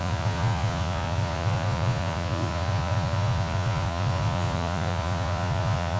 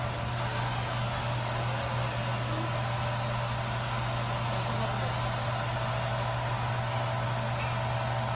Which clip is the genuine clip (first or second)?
second